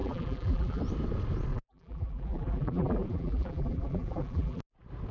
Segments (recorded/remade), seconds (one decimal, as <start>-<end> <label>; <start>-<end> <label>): 0.0-0.8 remade; 0.8-1.5 recorded; 1.5-4.6 remade; 4.6-5.1 recorded